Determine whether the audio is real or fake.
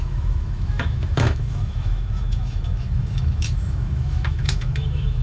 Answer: fake